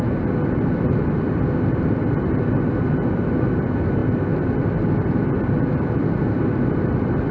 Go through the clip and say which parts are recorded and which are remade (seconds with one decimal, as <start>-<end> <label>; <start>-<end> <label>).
0.0-7.3 recorded